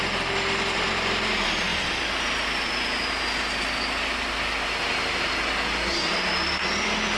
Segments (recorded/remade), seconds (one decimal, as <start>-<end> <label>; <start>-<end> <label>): 0.0-7.2 recorded